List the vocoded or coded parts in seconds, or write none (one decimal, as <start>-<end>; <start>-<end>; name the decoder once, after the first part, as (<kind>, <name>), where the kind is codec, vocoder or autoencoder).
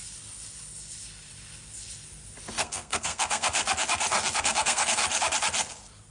2.6-3.6 (codec, SNAC); 4.4-5.0